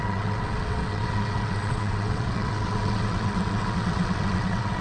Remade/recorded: remade